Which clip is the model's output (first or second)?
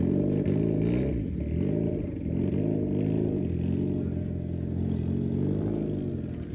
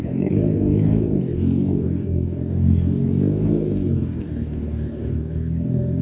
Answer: second